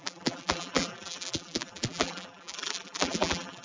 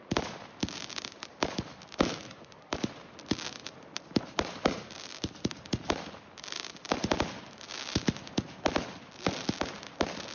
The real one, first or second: second